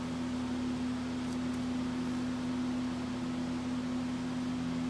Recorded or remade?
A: recorded